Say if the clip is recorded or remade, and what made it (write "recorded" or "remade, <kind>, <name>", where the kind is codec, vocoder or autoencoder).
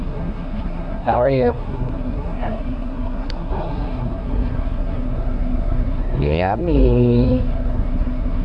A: remade, codec, SNAC